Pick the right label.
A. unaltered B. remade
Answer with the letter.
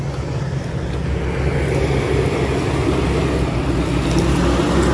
A